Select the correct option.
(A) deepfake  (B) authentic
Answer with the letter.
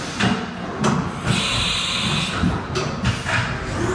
B